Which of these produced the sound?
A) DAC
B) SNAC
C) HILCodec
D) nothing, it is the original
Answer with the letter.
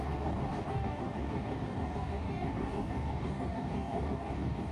A